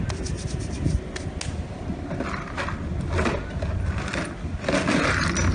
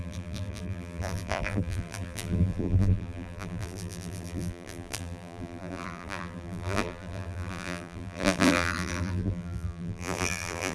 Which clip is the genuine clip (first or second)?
first